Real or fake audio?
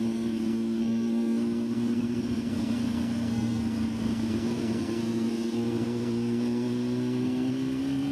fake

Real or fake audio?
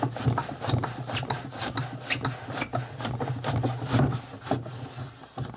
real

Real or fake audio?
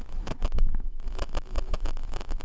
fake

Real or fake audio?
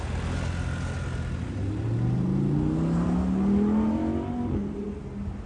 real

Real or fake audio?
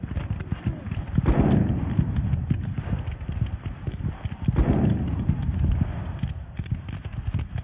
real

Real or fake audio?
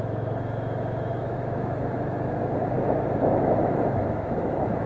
fake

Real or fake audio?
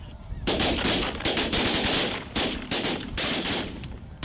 real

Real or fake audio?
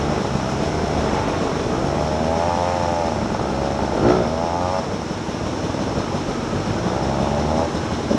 real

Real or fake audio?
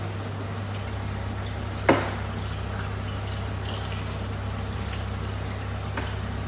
real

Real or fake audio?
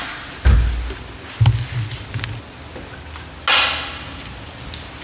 real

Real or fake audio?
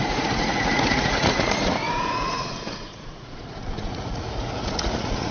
fake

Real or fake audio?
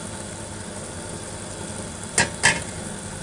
real